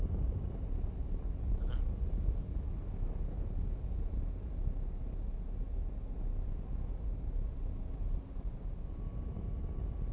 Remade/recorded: recorded